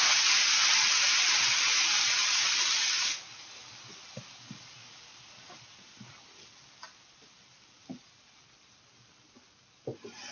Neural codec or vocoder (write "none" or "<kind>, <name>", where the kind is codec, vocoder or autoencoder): none